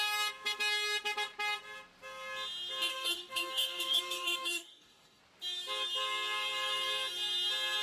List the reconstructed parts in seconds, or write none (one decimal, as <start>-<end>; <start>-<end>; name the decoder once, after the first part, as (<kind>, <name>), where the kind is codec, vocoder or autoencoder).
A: 2.9-5.2 (codec, DAC)